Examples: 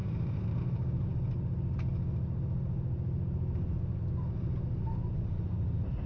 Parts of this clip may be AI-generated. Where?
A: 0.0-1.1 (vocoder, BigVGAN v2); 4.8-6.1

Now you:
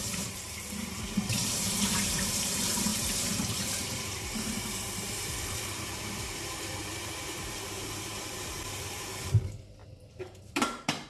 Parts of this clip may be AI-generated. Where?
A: 0.0-6.8 (vocoder, BigVGAN v2); 7.4-11.1